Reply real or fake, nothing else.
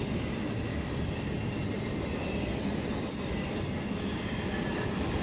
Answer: real